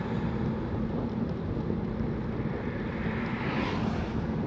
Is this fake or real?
real